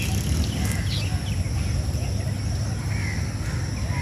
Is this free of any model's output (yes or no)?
yes